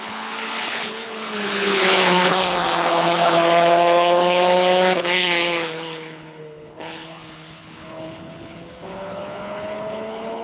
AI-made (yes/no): yes